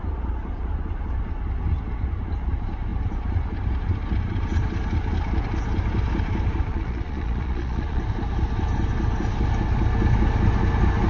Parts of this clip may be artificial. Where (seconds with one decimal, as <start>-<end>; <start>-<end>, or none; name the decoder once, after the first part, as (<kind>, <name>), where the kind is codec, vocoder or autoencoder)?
6.7-8.0 (vocoder, Vocos)